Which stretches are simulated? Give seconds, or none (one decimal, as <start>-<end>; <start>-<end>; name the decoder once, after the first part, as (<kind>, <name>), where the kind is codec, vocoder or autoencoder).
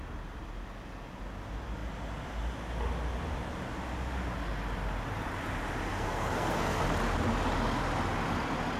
5.9-6.8 (codec, SNAC)